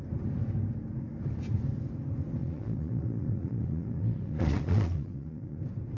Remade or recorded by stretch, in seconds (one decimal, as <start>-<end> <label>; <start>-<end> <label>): 0.0-2.4 recorded; 2.4-5.6 remade; 5.6-6.0 recorded